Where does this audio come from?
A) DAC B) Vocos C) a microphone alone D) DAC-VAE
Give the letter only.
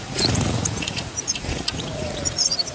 B